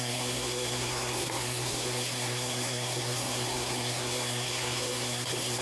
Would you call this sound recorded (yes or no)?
no